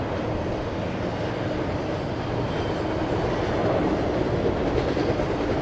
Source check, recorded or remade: recorded